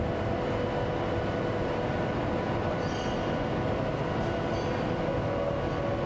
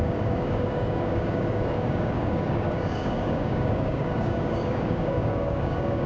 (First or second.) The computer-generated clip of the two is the second